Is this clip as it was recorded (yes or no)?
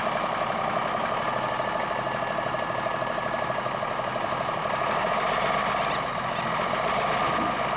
yes